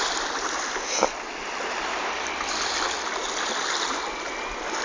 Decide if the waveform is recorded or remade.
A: recorded